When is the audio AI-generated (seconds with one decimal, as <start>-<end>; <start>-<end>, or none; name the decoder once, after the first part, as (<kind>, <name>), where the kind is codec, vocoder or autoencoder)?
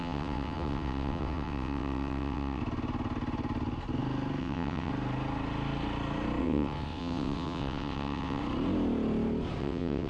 0.0-2.6 (vocoder, WaveNeXt); 4.4-4.9; 6.4-8.4; 9.6-10.1